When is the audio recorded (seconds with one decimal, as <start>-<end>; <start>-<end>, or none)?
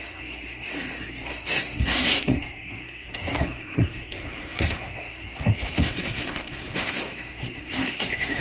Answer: none